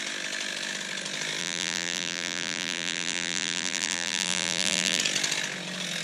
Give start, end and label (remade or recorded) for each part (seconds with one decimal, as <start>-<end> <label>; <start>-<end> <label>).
0.0-1.4 recorded; 1.4-5.0 remade; 5.0-6.0 recorded